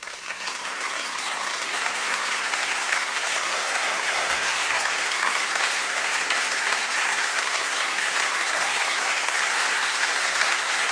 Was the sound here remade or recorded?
remade